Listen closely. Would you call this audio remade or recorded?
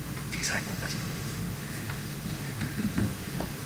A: remade